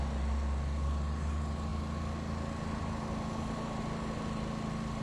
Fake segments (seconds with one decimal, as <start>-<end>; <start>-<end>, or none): none